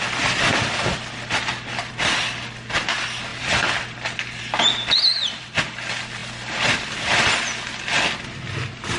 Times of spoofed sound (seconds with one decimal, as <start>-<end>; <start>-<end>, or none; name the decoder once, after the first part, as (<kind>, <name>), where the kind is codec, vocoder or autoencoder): 0.5-1.9 (vocoder, BigVGAN v2); 3.3-4.4; 6.2-7.3